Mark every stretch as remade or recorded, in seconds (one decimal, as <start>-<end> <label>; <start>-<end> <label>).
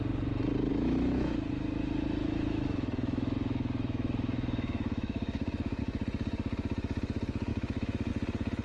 0.0-0.7 recorded; 0.7-1.5 remade; 1.5-2.2 recorded; 2.2-5.8 remade; 5.8-7.5 recorded; 7.5-8.1 remade; 8.1-8.6 recorded